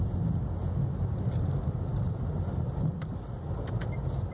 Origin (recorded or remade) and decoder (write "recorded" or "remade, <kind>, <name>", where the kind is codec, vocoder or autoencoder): recorded